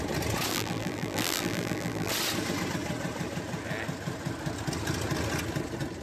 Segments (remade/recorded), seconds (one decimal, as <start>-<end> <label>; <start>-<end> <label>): 0.0-0.5 recorded; 0.5-2.1 remade; 2.1-6.0 recorded